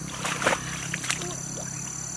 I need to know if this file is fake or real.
real